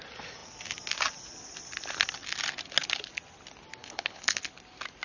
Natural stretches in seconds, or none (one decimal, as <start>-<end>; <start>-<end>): 0.0-3.8; 4.4-5.0